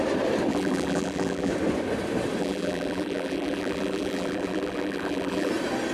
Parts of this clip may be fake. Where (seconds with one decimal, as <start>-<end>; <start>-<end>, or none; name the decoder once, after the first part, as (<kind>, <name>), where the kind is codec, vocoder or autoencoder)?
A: 0.5-1.5 (vocoder, BigVGAN v2); 2.4-5.5